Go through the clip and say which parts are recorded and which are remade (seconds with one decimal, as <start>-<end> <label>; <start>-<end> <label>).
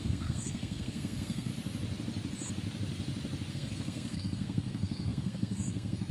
0.0-1.5 remade; 1.5-3.5 recorded; 3.5-6.1 remade